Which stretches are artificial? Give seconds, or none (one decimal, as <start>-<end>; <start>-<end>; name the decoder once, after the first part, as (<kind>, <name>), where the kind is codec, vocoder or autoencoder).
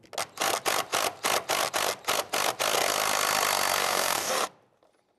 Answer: 3.8-4.3 (codec, DAC)